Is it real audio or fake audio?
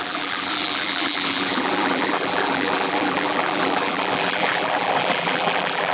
fake